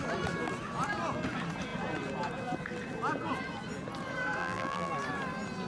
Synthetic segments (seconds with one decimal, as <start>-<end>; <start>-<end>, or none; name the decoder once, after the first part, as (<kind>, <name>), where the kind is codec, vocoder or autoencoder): 4.4-4.9 (vocoder, BigVGAN v2)